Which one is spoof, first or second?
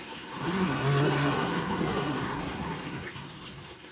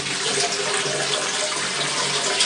first